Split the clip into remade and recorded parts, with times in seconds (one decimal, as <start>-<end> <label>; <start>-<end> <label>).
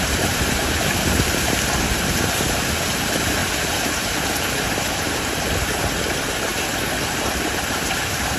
0.0-6.5 remade; 6.5-7.1 recorded; 7.1-8.4 remade